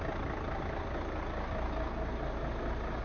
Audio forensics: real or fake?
real